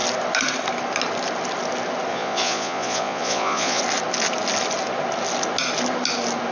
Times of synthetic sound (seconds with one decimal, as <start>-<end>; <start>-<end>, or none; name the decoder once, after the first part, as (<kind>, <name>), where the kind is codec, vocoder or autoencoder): 2.1-3.8 (vocoder, Vocos)

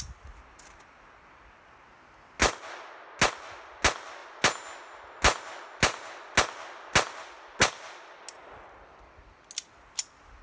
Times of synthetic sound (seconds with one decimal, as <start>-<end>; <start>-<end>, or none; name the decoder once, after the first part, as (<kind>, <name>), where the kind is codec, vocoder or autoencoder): none